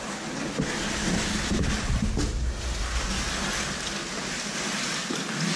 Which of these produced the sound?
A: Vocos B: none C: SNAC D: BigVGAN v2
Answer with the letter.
B